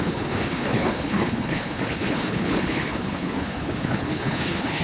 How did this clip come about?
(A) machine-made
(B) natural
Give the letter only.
A